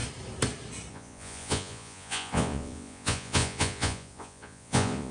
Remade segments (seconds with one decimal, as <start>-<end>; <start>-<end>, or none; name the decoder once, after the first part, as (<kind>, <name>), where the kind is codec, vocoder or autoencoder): 0.9-5.1 (vocoder, Vocos)